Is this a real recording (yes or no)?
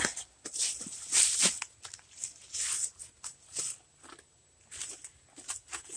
yes